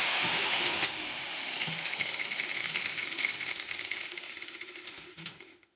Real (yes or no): no